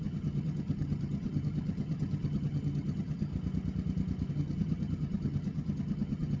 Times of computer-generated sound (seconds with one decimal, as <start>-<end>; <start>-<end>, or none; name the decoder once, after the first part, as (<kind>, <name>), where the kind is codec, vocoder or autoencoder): 0.0-3.3 (vocoder, HiFi-GAN); 4.3-6.4